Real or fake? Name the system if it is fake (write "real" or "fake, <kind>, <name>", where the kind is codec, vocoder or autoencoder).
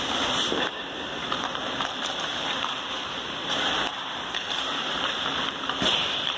fake, vocoder, BigVGAN v2